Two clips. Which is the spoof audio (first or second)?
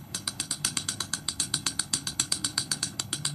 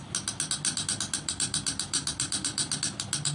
first